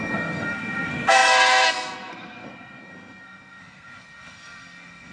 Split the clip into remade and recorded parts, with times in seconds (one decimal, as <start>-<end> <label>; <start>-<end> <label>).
0.0-5.1 remade